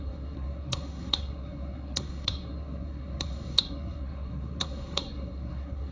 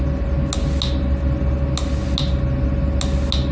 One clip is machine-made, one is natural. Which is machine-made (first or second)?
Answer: first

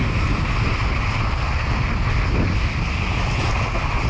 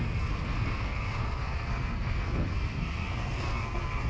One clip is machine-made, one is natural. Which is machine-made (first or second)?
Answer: second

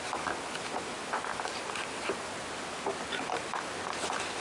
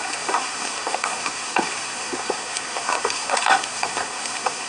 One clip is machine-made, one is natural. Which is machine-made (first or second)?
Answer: second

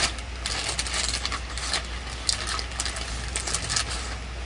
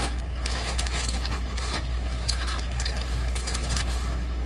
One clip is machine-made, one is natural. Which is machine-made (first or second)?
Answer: second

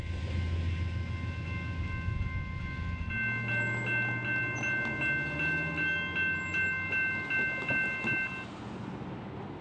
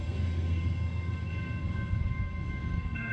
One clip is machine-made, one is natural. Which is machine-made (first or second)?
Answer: second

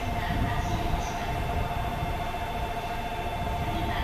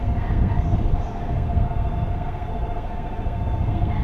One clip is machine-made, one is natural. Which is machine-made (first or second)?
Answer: second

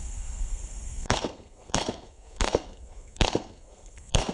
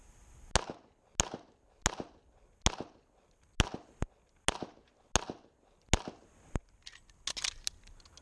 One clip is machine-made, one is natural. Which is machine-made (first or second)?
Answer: first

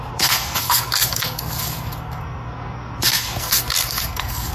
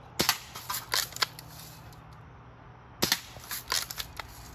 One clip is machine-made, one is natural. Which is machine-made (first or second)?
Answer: first